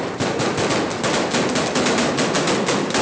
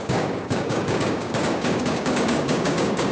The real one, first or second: first